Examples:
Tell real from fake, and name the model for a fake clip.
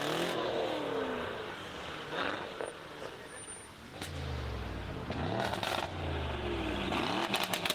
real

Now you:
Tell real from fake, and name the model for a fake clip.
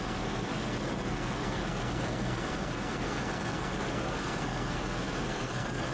fake, codec, SNAC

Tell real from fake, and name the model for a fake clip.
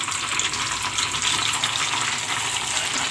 real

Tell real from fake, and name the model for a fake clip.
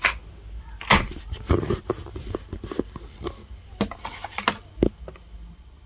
real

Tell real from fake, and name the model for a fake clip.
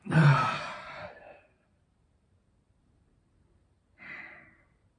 fake, vocoder, BigVGAN v2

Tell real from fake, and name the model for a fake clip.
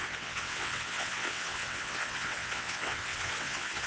fake, vocoder, WaveNeXt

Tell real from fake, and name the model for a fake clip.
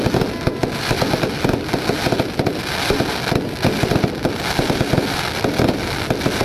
real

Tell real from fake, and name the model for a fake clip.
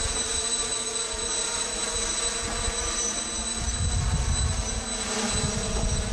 real